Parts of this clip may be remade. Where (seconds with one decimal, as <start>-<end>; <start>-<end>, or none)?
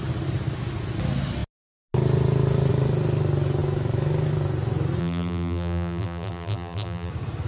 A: 5.0-7.1